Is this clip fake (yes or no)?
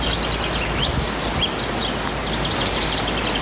no